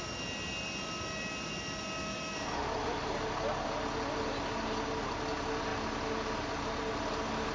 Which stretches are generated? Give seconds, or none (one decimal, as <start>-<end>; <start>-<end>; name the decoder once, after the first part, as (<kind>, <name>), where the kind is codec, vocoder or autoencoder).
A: none